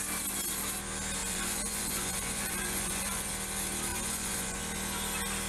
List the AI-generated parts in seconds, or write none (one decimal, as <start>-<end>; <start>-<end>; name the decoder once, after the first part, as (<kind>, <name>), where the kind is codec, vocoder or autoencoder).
1.2-3.3 (vocoder, Vocos); 3.9-4.6